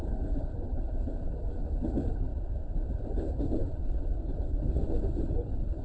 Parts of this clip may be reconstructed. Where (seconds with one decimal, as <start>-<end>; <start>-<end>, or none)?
0.0-2.3; 2.9-5.8